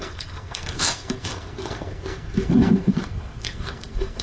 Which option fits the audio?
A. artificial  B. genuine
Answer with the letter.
A